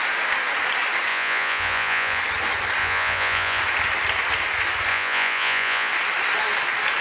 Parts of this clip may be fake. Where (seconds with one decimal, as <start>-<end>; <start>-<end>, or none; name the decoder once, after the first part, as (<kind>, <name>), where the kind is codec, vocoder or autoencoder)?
1.1-2.2 (vocoder, Vocos); 2.8-3.6; 4.9-5.9